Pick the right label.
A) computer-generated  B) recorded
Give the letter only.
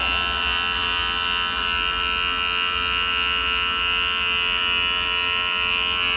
B